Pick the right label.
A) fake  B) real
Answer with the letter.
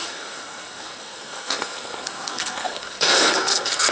A